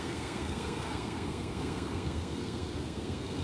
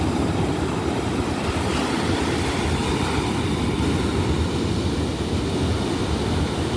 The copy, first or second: first